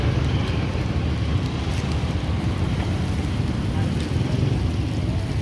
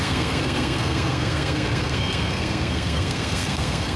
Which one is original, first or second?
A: first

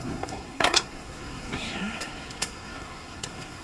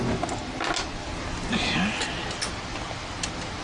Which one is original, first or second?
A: second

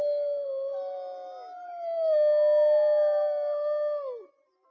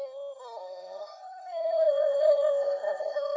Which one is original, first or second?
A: first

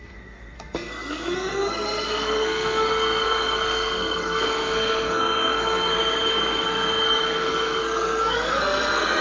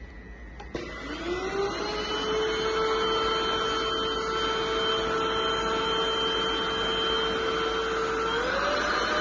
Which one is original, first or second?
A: second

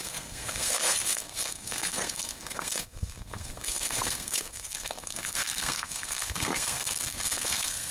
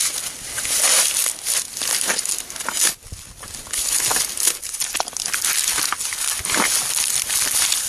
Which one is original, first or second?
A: second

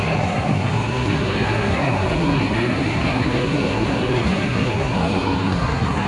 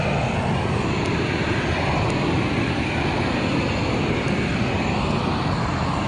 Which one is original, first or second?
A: second